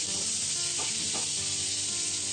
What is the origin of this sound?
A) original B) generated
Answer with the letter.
A